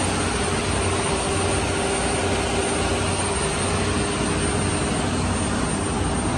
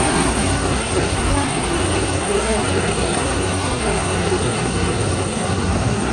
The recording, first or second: first